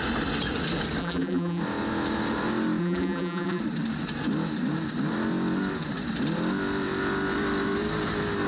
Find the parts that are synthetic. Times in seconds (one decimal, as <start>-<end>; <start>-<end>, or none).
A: 1.0-1.6; 2.8-3.6